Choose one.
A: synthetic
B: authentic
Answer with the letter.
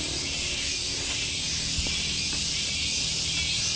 B